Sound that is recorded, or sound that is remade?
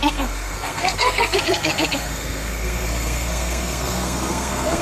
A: remade